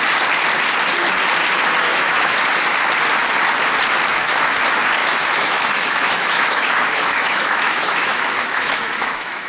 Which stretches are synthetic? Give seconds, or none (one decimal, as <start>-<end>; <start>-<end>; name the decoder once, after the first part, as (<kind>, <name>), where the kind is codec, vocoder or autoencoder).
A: 1.9-2.4 (autoencoder, DAC-VAE); 5.0-9.5